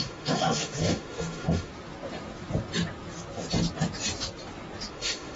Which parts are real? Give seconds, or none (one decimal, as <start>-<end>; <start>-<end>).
1.7-4.9